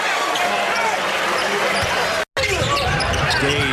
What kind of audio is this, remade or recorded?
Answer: recorded